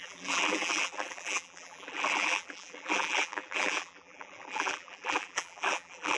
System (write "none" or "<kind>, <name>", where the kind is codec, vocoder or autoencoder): vocoder, BigVGAN v2